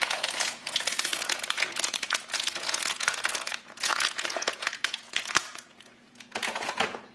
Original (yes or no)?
no